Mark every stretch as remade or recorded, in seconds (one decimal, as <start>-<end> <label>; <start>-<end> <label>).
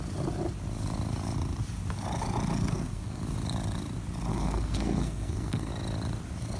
0.0-2.7 recorded; 2.7-3.2 remade; 3.2-4.3 recorded; 4.3-5.7 remade; 5.7-6.6 recorded